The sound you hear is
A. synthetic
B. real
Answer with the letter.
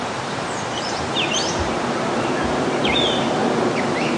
A